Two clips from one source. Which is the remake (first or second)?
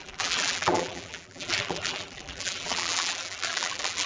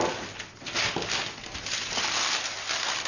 first